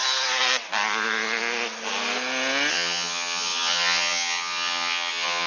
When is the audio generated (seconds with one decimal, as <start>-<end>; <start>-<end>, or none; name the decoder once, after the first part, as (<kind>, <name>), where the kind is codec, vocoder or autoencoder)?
2.7-5.5 (vocoder, HiFi-GAN)